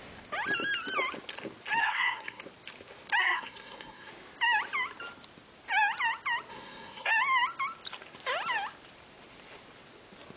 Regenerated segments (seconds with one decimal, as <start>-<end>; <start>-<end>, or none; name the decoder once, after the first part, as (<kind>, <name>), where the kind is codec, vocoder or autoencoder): 1.8-2.4 (codec, SNAC); 3.2-4.1; 6.5-7.1